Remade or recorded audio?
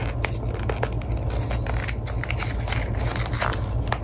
recorded